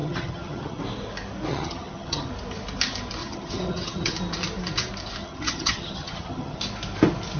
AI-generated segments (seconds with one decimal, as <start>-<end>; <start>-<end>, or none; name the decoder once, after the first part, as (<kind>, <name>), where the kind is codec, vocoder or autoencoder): 0.0-0.8 (vocoder, HiFi-GAN); 1.5-2.3; 3.2-4.1; 5.2-6.6